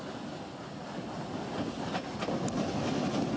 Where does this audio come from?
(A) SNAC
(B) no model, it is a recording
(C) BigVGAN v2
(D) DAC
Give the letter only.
B